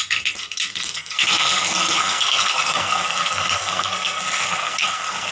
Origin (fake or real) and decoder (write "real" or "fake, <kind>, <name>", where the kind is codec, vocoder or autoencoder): fake, codec, SNAC